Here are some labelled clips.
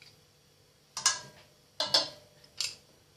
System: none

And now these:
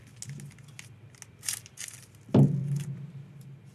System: none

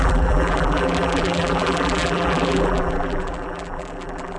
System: vocoder, BigVGAN v2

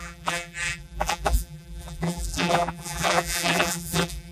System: vocoder, BigVGAN v2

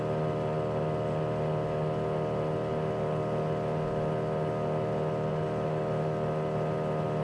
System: none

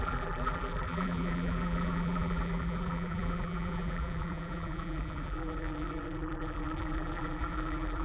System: vocoder, BigVGAN v2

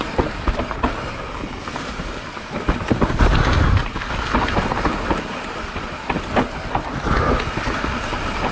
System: none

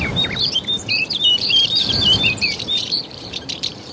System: vocoder, BigVGAN v2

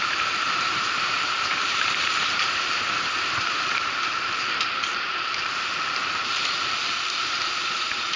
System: vocoder, BigVGAN v2